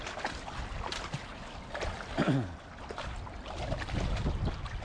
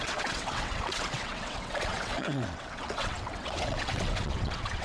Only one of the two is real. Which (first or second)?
first